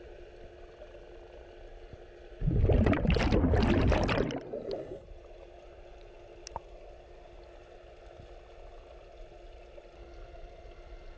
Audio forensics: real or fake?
real